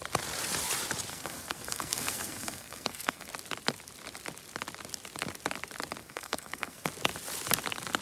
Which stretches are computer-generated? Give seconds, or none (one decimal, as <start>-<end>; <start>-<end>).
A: 1.1-3.3; 6.0-6.9